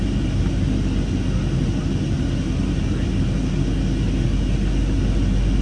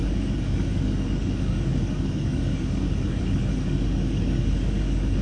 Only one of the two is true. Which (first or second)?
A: first